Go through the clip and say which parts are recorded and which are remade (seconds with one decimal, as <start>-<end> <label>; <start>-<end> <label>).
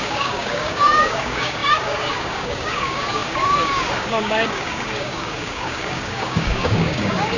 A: 0.0-7.4 remade